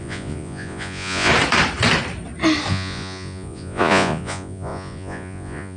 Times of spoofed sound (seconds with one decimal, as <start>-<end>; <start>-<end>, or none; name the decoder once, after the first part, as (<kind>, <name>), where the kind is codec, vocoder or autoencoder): 0.0-1.3 (vocoder, Vocos); 2.7-5.8